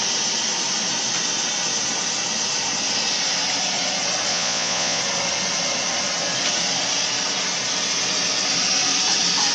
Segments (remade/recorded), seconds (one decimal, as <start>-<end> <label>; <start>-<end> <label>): 0.0-4.3 recorded; 4.3-5.0 remade; 5.0-9.5 recorded